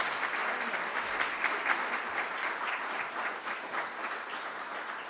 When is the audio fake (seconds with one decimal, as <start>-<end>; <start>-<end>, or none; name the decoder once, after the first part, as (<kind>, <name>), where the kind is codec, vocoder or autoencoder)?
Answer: none